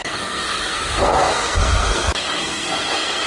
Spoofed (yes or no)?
yes